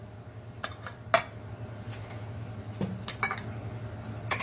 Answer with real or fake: real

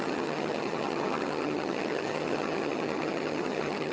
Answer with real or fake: fake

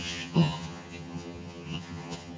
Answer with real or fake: fake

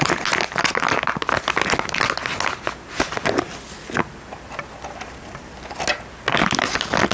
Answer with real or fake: real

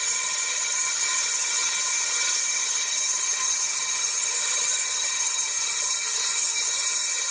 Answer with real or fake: fake